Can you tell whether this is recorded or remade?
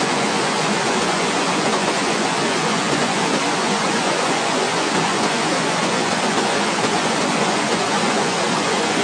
remade